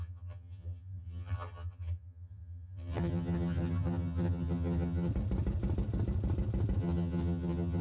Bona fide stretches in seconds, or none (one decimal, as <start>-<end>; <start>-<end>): 5.1-6.8